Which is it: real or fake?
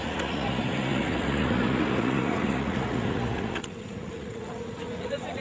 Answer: fake